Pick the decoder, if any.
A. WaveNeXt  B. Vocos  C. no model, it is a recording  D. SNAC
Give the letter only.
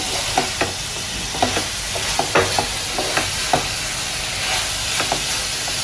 C